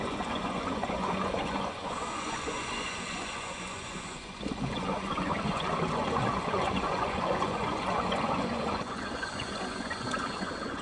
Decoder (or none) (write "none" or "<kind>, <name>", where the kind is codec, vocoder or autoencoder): vocoder, Vocos